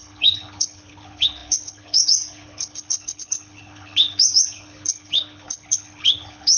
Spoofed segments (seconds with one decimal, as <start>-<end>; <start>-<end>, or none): 0.0-6.6